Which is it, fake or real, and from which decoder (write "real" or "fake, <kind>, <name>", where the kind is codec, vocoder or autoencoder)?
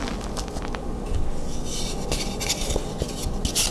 real